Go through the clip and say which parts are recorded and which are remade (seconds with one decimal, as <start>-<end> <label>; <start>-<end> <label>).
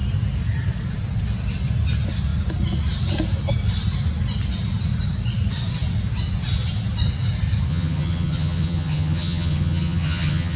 0.0-7.7 recorded; 7.7-10.6 remade